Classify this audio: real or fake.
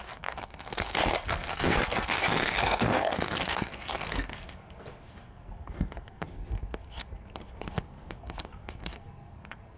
fake